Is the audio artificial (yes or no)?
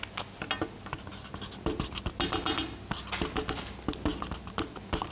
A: no